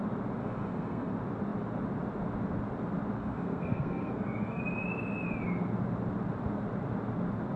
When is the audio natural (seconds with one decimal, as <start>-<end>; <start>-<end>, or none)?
0.0-0.4; 1.1-3.2; 4.6-7.6